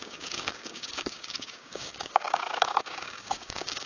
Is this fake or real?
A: fake